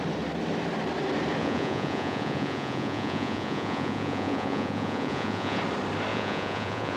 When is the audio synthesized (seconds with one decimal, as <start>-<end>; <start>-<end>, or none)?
1.4-5.6; 6.1-7.0